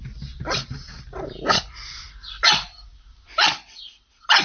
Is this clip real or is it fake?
real